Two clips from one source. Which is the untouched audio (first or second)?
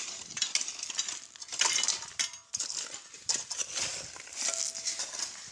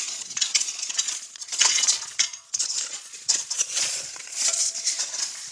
first